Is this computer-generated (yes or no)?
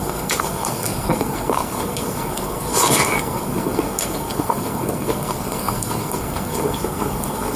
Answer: yes